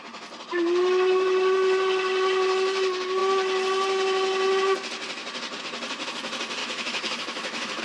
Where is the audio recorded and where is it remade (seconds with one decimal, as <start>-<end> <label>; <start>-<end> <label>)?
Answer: 0.0-6.6 recorded; 6.6-7.8 remade